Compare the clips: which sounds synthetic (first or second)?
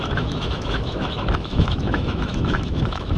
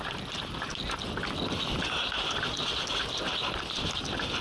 first